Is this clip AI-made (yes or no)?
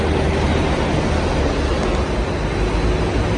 no